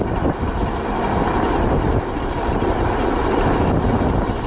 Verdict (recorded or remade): recorded